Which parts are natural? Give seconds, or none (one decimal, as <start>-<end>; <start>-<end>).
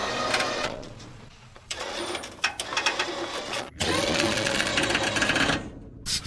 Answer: 0.0-0.5; 2.0-3.4; 4.7-6.3